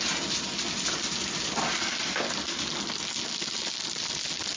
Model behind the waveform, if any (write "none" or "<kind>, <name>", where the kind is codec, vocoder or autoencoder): none